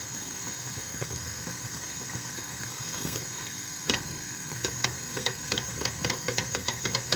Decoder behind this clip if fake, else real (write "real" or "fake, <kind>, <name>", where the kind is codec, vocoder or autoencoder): fake, codec, SNAC